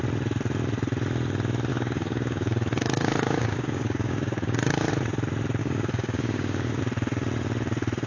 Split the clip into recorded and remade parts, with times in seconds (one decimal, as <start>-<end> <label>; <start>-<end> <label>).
0.0-1.7 recorded; 1.7-4.9 remade; 4.9-5.6 recorded; 5.6-6.8 remade; 6.8-8.1 recorded